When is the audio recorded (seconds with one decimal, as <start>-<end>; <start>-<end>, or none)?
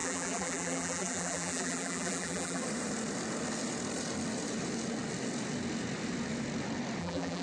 2.6-7.0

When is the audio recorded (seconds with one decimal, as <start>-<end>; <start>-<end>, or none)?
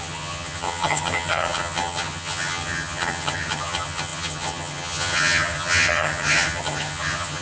none